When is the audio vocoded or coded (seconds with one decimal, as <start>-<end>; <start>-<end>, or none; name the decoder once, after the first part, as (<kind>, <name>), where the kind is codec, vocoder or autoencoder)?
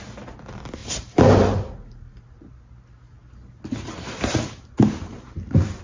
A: 0.8-2.2 (vocoder, BigVGAN v2)